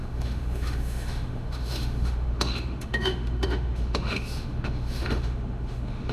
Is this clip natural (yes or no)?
no